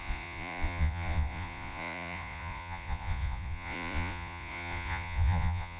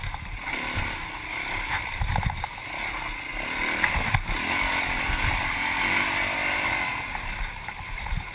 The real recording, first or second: second